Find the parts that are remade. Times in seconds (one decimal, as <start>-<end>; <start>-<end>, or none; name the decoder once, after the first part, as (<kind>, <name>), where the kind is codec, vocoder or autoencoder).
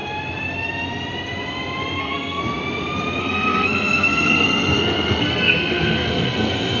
2.0-2.4 (codec, SNAC); 3.2-6.8